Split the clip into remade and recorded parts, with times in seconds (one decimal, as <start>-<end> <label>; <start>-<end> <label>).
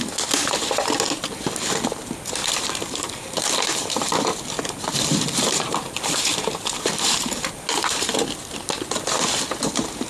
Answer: 0.0-2.4 recorded; 2.4-7.5 remade; 7.5-10.1 recorded